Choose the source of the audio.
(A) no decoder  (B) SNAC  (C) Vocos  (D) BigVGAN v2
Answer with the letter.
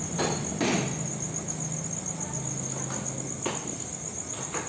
A